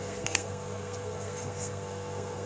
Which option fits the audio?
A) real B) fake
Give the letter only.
B